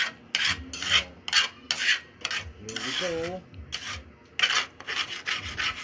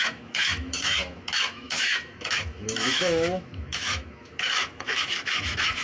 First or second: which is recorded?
first